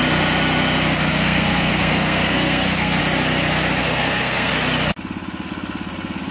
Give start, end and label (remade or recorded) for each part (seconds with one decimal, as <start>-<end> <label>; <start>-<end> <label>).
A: 0.0-1.1 recorded; 1.1-3.0 remade; 3.0-3.8 recorded; 3.8-4.5 remade; 4.5-6.3 recorded